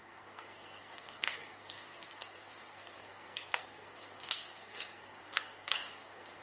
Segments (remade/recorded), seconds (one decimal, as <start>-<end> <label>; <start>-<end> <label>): 0.0-6.4 remade